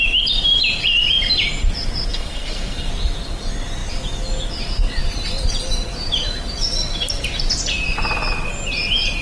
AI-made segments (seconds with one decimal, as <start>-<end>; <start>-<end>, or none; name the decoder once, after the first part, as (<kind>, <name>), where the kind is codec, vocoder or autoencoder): 2.1-2.9 (codec, SNAC)